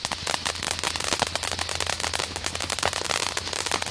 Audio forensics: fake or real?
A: real